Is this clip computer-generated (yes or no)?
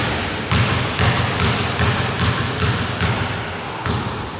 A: no